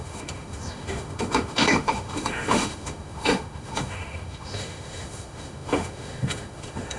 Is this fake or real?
fake